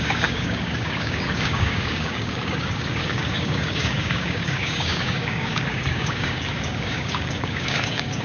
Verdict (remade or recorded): remade